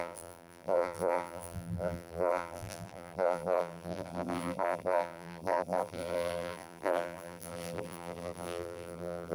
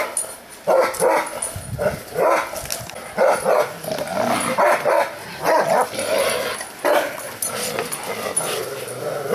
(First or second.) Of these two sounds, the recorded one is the second